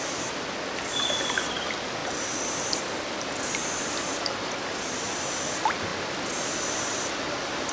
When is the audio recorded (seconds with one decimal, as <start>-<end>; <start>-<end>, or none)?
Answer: 5.9-6.7